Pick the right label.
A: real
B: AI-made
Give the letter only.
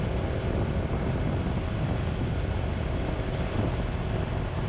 A